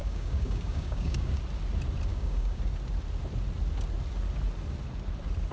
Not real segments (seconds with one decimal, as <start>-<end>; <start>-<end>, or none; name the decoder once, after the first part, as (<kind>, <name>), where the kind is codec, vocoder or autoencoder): 0.0-1.4 (codec, DAC); 2.1-2.6